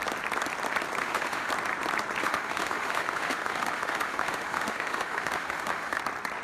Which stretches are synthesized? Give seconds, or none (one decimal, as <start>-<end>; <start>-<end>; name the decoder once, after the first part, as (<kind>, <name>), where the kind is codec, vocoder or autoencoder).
1.0-1.5 (autoencoder, DAC-VAE); 2.2-6.0